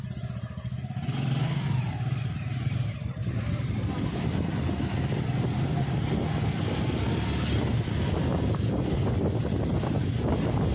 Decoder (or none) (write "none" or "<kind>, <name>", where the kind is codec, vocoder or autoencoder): none